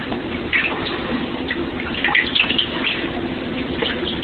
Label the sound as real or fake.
real